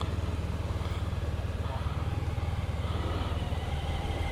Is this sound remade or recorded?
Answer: recorded